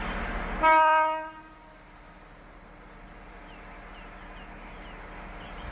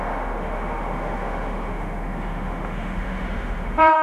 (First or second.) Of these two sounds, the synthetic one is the second